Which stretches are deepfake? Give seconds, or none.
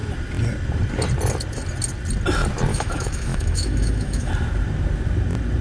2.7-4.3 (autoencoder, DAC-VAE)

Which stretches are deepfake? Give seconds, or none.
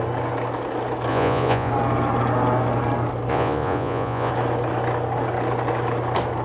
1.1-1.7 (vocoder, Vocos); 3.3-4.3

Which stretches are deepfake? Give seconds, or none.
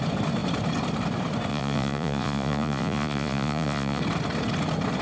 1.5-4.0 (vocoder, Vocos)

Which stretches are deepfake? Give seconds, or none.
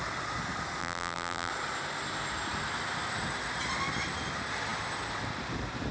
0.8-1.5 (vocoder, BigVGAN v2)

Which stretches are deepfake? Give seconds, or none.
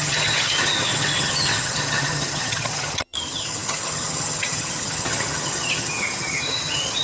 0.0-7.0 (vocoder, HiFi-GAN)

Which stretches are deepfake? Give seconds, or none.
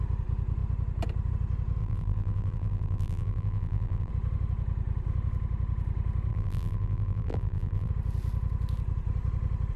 1.8-4.1 (vocoder, BigVGAN v2); 6.3-7.9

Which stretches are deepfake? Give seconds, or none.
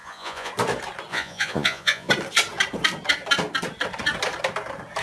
0.0-0.5 (vocoder, Vocos); 1.1-2.1